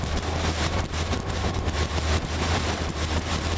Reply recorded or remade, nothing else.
remade